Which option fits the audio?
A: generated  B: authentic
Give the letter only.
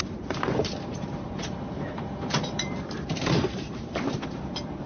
A